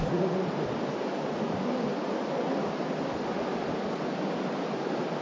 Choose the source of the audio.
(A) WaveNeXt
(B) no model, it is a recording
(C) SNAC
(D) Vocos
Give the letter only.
B